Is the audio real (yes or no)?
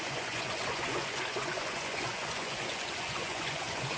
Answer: no